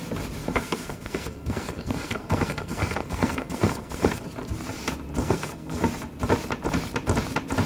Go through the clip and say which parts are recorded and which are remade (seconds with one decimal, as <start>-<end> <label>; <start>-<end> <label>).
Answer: 0.0-0.4 recorded; 0.4-4.2 remade; 4.2-5.2 recorded; 5.2-5.8 remade; 5.8-7.7 recorded